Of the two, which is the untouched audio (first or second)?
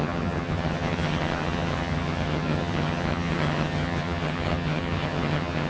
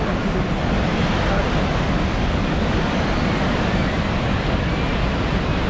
second